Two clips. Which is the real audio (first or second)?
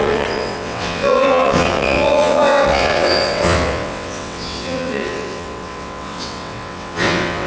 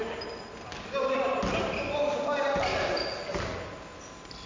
second